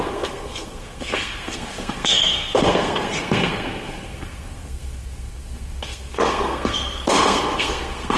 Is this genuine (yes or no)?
no